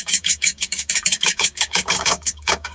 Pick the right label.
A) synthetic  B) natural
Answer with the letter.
A